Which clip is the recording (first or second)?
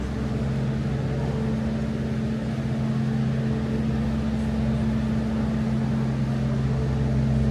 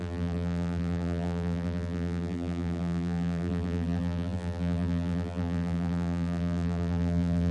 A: first